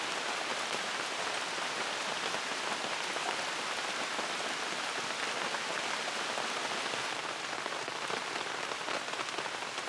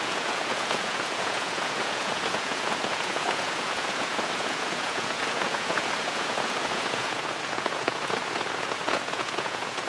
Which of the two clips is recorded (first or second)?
first